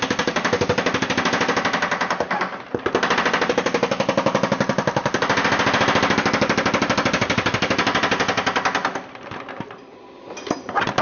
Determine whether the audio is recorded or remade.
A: recorded